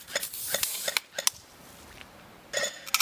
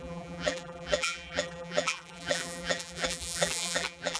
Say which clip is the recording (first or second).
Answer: first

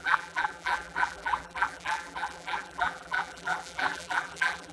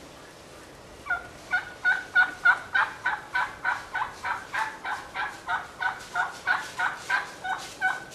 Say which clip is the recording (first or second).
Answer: second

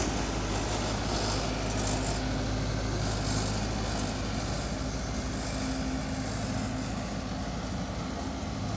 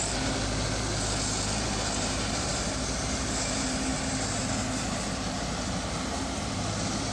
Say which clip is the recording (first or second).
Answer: first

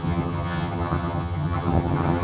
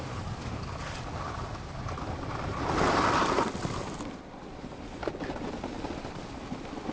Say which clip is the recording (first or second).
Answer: second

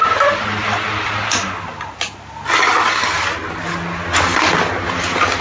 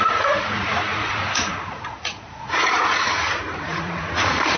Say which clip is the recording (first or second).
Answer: first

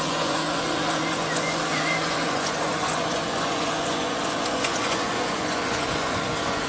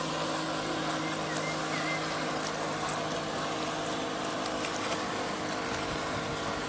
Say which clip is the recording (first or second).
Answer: second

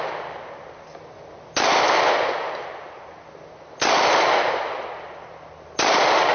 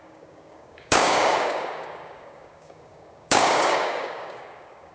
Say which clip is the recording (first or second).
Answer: first